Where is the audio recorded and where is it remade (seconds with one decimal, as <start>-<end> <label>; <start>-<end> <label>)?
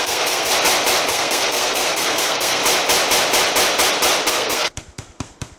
0.0-0.5 remade; 0.5-1.1 recorded; 1.1-2.6 remade; 2.6-4.3 recorded; 4.3-5.6 remade